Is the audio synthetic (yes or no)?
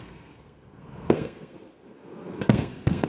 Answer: yes